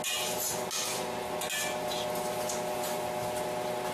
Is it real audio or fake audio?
real